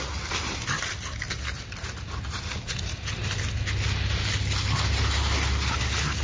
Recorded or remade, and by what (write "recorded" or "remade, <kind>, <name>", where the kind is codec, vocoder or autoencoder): recorded